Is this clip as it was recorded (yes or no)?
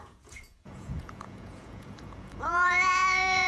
no